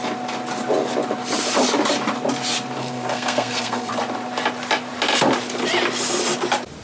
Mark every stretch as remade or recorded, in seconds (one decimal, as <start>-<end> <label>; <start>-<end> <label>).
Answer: 0.0-2.8 recorded; 2.8-3.9 remade; 3.9-6.8 recorded